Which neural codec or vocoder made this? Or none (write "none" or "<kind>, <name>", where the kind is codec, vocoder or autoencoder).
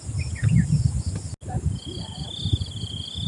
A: none